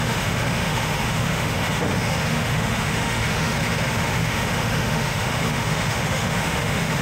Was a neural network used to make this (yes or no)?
yes